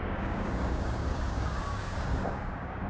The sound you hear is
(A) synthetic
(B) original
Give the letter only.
A